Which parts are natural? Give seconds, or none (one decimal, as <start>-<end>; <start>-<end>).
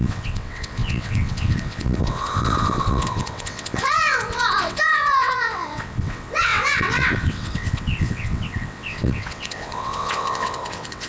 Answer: none